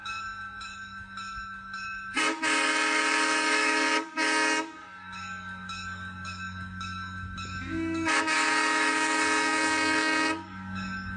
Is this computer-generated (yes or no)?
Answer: yes